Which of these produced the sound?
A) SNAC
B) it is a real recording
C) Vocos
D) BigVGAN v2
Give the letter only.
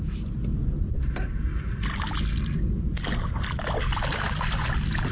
B